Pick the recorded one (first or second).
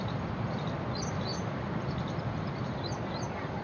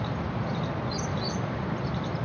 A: second